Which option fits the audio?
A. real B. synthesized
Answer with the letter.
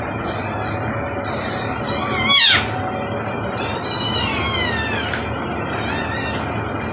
A